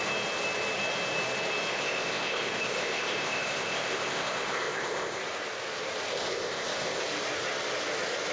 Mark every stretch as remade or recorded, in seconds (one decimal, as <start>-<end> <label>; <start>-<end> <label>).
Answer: 0.0-1.7 recorded; 1.7-5.2 remade; 5.2-6.1 recorded; 6.1-7.0 remade; 7.0-8.3 recorded